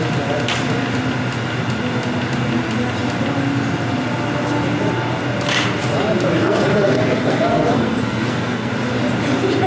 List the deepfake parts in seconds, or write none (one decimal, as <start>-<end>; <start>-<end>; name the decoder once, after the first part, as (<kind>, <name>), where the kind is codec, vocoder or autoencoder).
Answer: 6.4-8.7 (codec, SNAC)